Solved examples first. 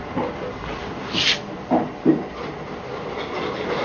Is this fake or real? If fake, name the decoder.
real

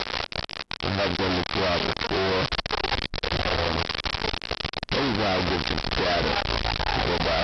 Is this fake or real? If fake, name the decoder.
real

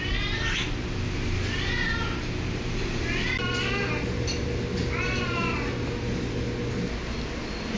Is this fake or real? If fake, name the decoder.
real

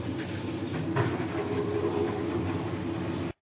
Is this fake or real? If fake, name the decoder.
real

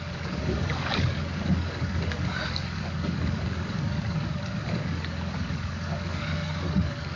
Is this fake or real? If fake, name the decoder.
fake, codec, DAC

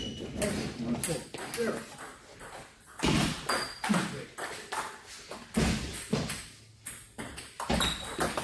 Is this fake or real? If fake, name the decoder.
real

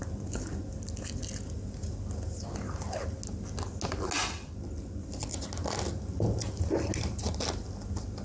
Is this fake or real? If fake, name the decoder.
real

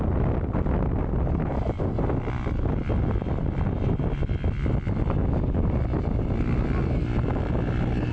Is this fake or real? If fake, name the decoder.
real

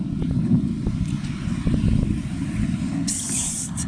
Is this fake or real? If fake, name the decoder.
real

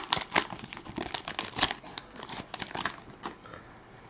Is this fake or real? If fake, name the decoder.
real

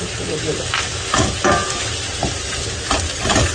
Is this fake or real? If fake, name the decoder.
real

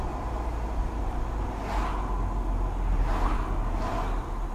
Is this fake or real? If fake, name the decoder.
real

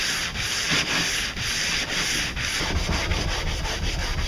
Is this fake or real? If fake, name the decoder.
real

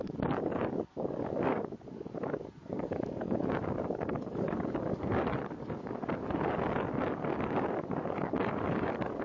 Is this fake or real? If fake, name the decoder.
fake, codec, DAC